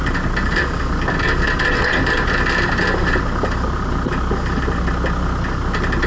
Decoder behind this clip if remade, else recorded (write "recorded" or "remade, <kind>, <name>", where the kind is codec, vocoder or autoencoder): recorded